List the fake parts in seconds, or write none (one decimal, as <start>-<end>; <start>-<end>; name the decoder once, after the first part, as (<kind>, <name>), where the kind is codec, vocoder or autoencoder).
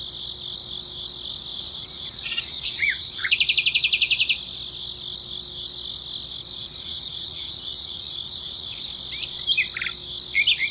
1.5-3.3 (vocoder, Vocos); 6.6-8.8